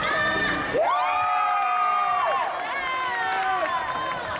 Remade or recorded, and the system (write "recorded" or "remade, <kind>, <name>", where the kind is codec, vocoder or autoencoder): recorded